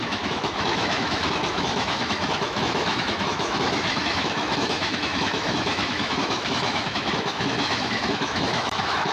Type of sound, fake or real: fake